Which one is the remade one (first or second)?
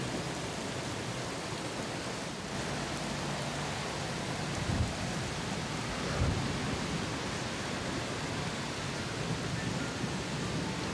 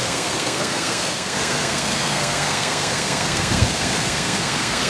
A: second